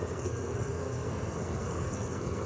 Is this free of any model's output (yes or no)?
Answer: no